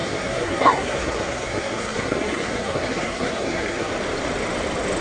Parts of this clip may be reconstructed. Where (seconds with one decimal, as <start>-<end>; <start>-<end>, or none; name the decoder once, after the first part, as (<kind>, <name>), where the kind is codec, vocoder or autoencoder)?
0.0-3.9 (codec, SNAC)